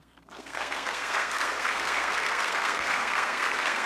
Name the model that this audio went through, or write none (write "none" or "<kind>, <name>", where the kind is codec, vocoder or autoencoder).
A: codec, SNAC